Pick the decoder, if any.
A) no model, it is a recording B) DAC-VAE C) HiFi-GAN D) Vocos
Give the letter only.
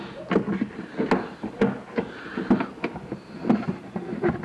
A